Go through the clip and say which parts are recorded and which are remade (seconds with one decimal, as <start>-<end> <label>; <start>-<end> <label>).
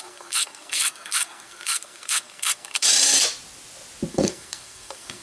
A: 0.0-2.9 remade; 2.9-4.1 recorded; 4.1-5.2 remade